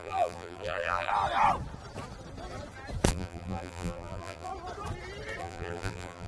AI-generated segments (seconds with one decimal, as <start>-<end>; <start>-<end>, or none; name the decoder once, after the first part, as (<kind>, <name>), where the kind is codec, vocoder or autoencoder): 0.0-1.1 (vocoder, BigVGAN v2); 3.1-4.5; 5.4-6.3